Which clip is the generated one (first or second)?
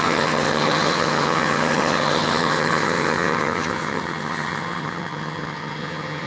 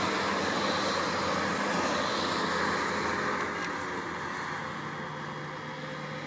first